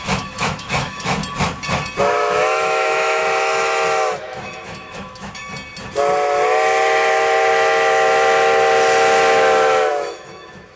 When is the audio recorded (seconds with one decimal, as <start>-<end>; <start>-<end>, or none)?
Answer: 1.2-2.0; 3.2-4.2; 5.4-9.9